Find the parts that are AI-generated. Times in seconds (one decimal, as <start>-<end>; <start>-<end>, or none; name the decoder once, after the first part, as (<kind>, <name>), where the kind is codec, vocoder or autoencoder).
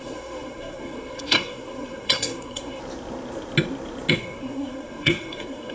0.0-2.8 (codec, SNAC); 4.1-5.7